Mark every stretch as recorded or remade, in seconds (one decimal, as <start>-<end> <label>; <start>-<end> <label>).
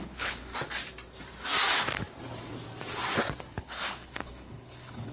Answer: 0.0-0.5 remade; 0.5-3.6 recorded; 3.6-5.1 remade